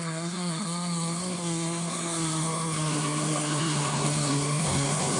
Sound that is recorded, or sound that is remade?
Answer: remade